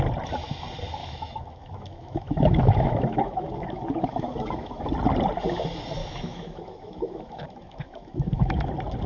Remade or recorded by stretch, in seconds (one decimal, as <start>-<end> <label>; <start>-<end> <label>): 0.0-1.0 recorded; 1.0-4.9 remade; 4.9-6.0 recorded; 6.0-8.7 remade; 8.7-9.1 recorded